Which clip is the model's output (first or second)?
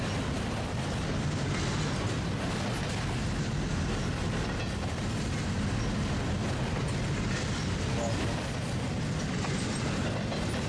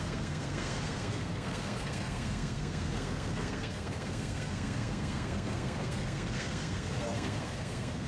second